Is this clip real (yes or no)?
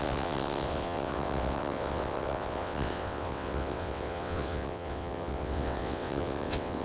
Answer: no